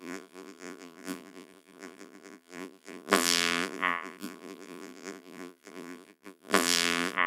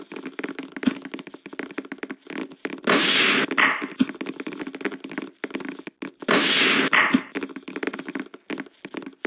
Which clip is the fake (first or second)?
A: first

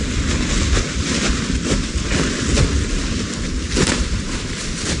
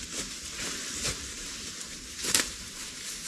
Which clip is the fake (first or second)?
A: second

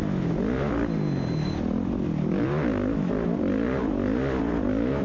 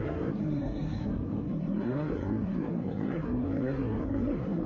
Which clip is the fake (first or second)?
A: second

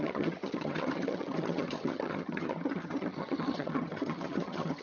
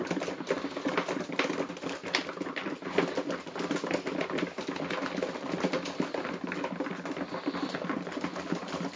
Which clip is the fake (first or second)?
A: first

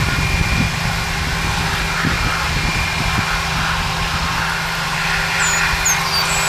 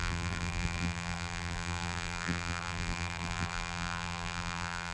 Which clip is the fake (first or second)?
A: second